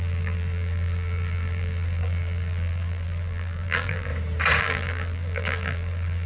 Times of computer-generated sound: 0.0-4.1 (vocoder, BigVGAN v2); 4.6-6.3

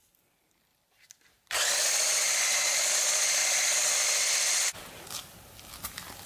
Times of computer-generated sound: 0.7-2.4 (vocoder, BigVGAN v2); 3.4-5.0

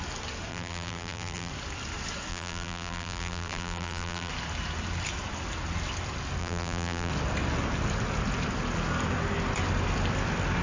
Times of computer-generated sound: 0.5-1.5 (vocoder, BigVGAN v2); 2.3-4.3; 6.4-7.1

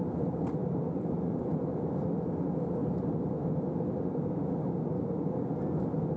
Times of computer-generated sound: none